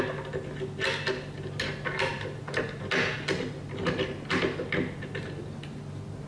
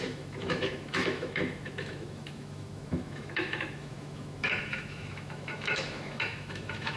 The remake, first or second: second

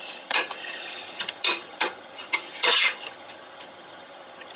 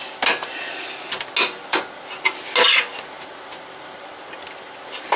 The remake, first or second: first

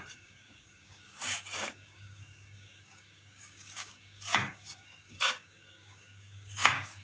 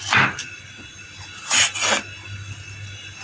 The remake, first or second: first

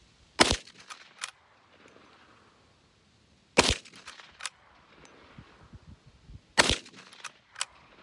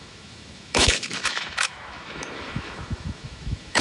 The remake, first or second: second